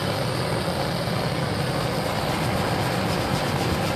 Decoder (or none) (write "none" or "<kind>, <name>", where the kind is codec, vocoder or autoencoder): none